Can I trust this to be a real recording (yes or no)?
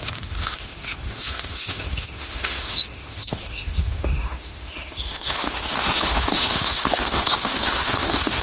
no